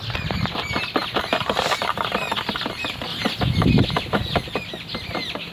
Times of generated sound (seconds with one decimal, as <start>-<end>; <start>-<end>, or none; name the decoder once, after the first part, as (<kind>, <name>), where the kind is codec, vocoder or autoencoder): none